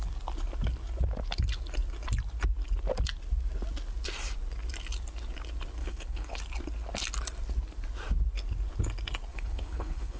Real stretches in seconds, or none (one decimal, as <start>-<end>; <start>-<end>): 0.0-5.8; 6.4-9.3